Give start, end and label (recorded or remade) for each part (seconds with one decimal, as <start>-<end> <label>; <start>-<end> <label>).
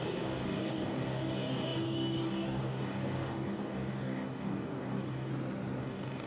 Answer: 0.0-5.3 remade; 5.3-5.8 recorded; 5.8-6.3 remade